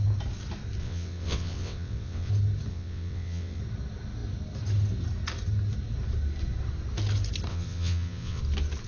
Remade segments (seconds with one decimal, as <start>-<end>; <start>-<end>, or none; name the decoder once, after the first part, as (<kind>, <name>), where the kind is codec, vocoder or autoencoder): 0.8-2.3 (vocoder, WaveNeXt); 2.7-3.6; 7.5-8.4